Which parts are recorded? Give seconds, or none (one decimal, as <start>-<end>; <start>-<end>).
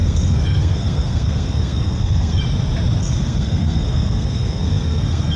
2.4-3.0